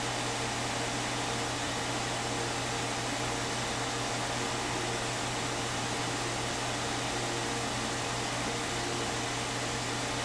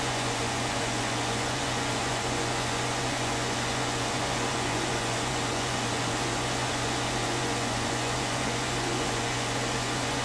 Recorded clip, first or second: first